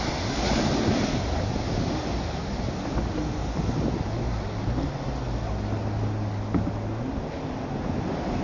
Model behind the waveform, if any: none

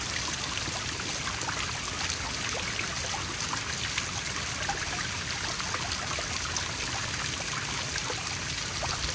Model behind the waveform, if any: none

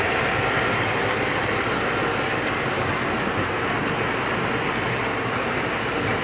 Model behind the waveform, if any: none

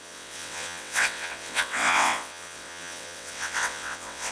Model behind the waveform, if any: vocoder, WaveNeXt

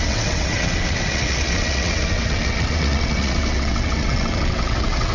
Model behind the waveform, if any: vocoder, WaveNeXt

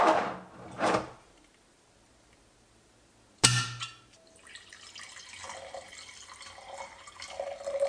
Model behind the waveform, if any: none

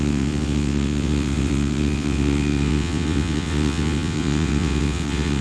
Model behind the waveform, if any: vocoder, WaveNeXt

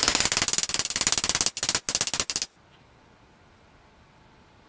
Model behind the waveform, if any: none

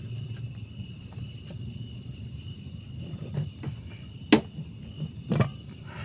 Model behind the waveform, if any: none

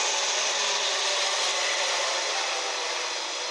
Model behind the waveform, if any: none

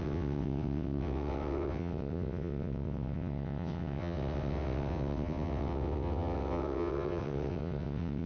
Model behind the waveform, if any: vocoder, WaveNeXt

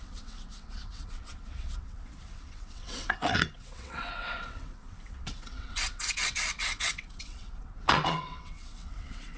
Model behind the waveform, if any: vocoder, WaveNeXt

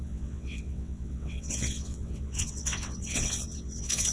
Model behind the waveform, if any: vocoder, WaveNeXt